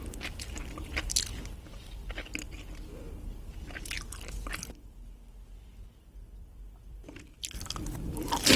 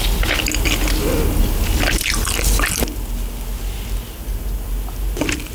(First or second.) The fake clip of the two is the first